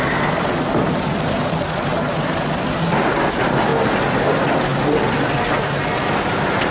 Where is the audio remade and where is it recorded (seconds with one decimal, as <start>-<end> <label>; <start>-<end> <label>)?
0.0-6.7 recorded